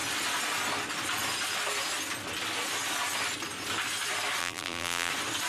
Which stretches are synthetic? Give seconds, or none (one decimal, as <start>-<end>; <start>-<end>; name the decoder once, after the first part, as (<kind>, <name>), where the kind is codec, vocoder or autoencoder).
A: 4.4-5.1 (vocoder, BigVGAN v2)